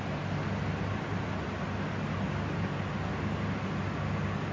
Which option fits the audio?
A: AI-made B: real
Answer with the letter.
B